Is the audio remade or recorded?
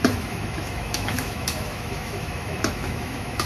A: remade